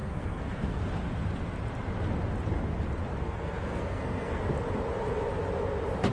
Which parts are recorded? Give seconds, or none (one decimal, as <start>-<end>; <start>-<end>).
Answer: 0.8-3.1; 4.4-6.1